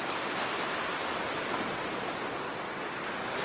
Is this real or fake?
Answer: real